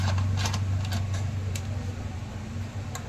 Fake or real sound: real